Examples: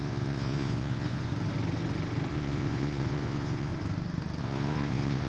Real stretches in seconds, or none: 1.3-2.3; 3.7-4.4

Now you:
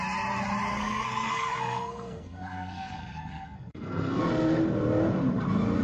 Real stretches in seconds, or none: 0.0-0.7; 4.2-5.8

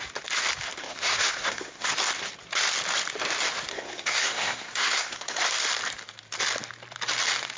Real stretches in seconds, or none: 0.0-0.8; 1.9-3.7; 5.4-7.6

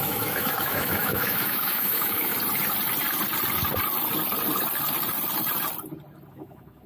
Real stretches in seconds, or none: 2.3-6.3